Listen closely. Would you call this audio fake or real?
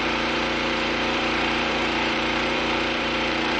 fake